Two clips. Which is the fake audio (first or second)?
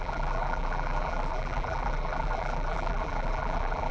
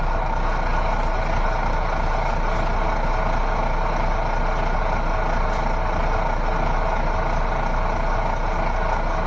first